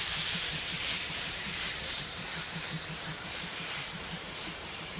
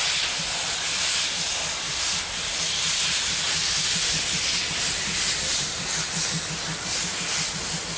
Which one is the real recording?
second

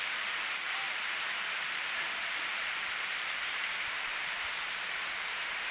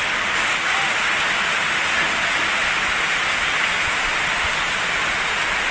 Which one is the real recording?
second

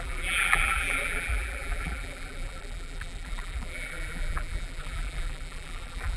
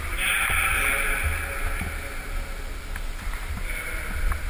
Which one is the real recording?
second